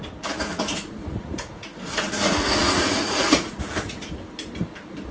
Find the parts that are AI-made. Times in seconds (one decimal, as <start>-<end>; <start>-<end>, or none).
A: 0.5-3.6